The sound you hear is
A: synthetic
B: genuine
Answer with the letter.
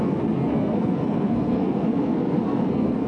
A